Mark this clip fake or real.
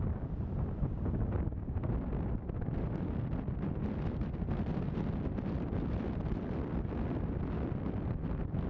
real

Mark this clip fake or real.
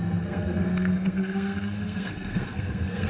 fake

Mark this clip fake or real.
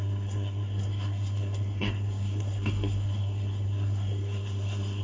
fake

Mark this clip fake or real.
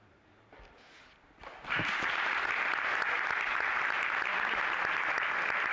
real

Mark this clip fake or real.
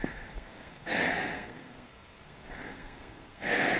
fake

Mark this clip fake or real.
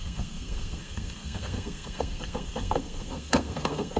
fake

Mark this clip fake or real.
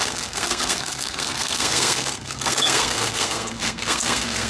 fake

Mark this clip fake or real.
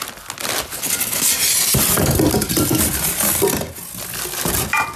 real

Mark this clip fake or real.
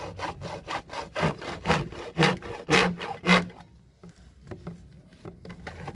real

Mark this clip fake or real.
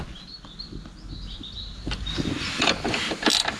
real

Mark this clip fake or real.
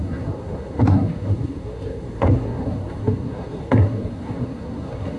fake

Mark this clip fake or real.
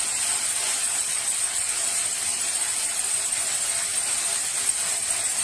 real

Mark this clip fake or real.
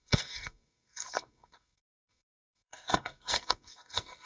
fake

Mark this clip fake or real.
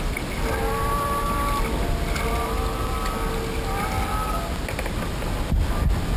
real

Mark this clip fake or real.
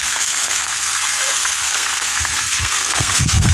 fake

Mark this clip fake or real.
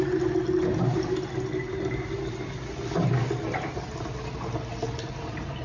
real